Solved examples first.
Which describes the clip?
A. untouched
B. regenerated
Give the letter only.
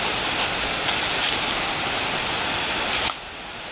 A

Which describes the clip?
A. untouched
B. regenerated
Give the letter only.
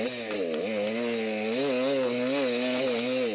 A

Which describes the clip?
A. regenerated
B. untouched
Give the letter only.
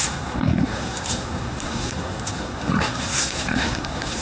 A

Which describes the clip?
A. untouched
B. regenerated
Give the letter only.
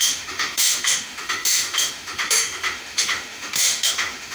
B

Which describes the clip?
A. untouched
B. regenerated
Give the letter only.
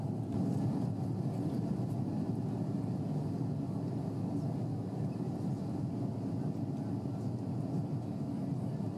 A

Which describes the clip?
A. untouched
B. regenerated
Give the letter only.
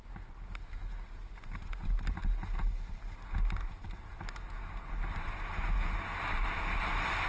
A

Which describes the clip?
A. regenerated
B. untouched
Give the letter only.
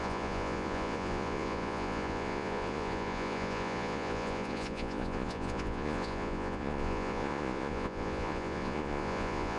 A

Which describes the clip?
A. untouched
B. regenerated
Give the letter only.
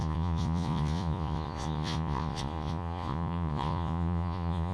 B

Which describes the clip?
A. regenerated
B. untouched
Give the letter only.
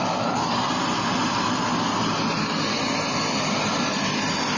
B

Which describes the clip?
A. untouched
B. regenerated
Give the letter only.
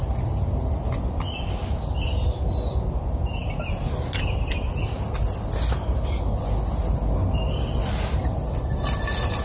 A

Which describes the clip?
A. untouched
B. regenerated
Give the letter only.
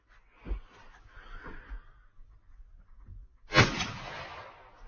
A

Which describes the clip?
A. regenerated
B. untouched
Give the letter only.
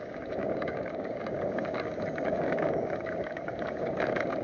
A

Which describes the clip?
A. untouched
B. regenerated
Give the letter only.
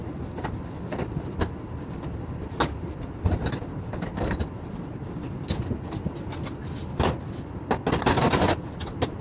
A